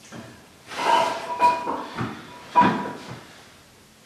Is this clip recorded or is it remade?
recorded